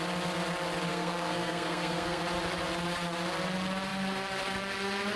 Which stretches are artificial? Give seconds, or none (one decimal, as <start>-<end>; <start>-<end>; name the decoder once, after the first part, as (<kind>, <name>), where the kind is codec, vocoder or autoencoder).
0.9-2.2 (codec, SNAC)